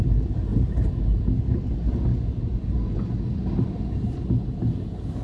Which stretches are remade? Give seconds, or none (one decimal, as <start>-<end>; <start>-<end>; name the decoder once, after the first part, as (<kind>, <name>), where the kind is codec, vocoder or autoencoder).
none